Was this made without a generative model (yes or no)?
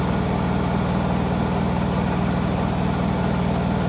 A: yes